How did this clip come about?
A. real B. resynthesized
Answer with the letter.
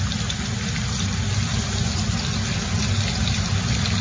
A